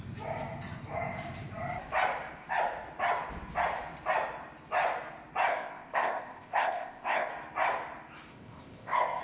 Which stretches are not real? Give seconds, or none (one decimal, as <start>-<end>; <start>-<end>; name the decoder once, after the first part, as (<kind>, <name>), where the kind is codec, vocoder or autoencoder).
5.5-7.3 (codec, ZipCodec); 8.3-9.2